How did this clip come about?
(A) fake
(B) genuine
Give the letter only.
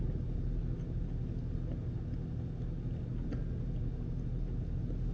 B